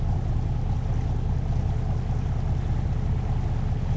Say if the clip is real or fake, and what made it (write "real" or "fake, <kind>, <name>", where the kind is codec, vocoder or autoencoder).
real